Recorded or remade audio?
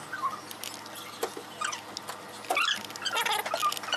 recorded